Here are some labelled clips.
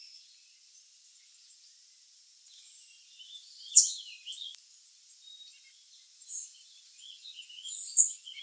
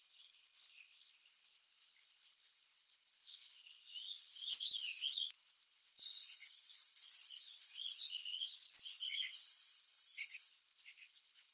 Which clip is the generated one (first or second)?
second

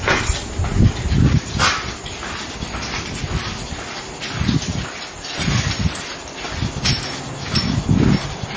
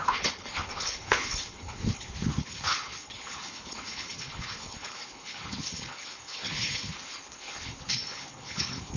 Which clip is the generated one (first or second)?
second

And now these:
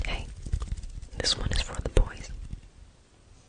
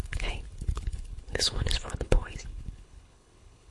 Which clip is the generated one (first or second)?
second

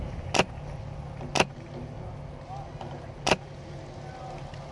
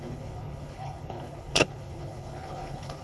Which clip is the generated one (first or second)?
second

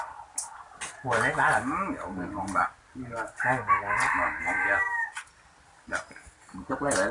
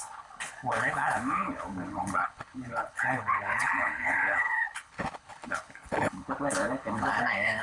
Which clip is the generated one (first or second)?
second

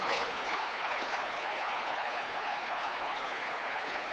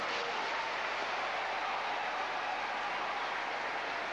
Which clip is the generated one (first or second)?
first